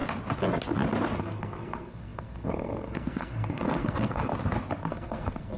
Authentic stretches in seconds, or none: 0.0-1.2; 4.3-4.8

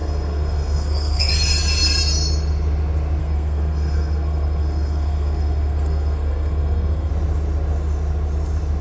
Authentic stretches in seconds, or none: 1.3-3.2; 7.1-8.8

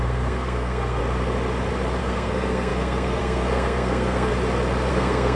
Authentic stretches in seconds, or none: 1.0-2.0; 4.3-4.9

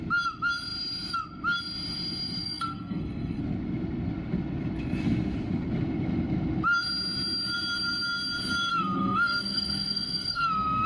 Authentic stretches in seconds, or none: 0.0-2.4; 3.4-8.7

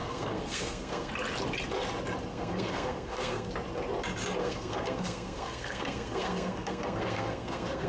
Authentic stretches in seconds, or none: 1.1-2.3; 3.5-4.4

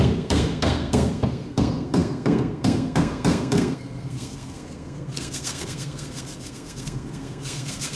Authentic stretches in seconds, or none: none